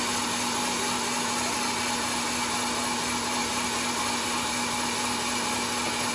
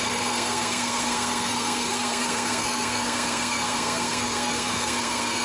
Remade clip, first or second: second